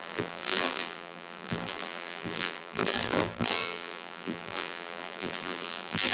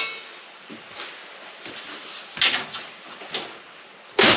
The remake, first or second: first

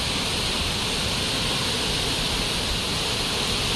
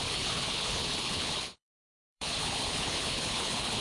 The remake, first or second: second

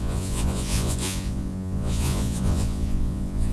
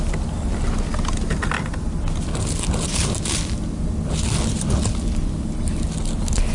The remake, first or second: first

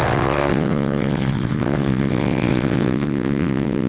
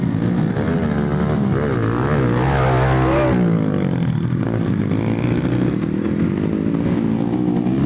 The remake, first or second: first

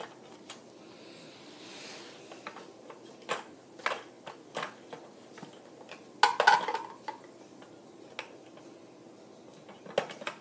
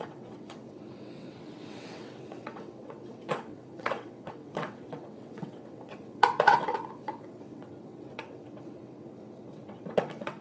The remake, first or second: second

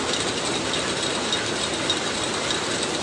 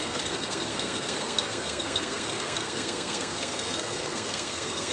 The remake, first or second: second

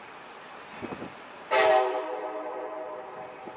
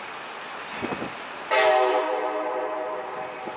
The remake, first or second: first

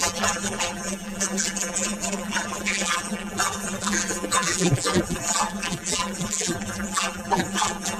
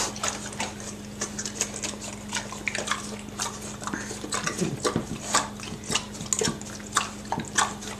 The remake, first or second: first